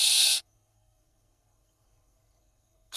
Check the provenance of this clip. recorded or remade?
remade